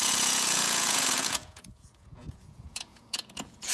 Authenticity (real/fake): fake